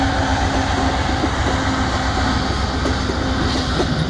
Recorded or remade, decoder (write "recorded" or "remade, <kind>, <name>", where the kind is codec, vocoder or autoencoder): recorded